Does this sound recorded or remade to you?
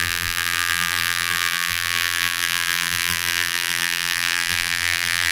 remade